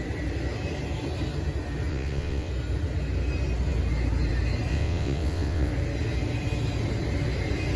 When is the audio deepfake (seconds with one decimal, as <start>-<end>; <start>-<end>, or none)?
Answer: 1.9-2.5; 4.7-5.7